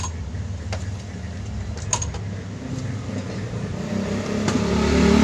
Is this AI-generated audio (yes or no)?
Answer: no